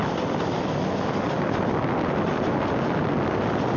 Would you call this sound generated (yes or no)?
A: no